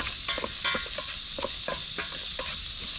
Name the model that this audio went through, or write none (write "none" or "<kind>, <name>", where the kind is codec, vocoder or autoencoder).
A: none